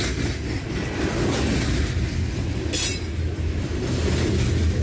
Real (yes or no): yes